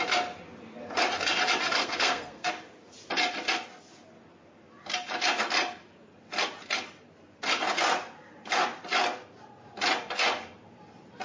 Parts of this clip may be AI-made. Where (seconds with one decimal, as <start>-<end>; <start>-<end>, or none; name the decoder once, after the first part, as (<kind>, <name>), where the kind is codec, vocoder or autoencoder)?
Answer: 1.8-2.5 (codec, SNAC)